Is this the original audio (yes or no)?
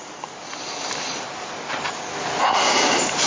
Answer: yes